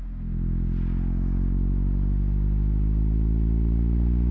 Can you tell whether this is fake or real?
real